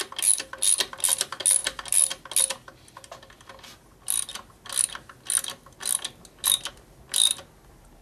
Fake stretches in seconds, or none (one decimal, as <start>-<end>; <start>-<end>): none